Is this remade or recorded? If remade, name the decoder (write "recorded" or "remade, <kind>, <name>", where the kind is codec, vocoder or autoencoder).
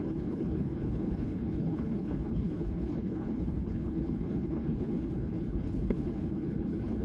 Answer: remade, codec, HILCodec